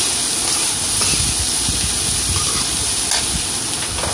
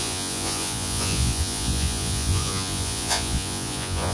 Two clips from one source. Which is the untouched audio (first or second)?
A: first